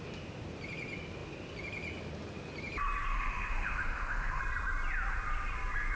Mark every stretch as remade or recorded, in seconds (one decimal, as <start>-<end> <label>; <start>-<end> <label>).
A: 0.0-3.1 recorded; 3.1-4.4 remade; 4.4-6.0 recorded